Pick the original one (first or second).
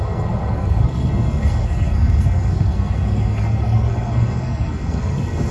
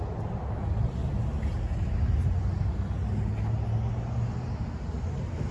second